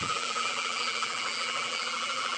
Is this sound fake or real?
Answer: fake